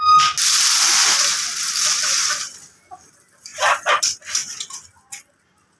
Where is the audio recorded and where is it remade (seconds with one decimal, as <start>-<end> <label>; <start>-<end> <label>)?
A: 0.0-5.8 recorded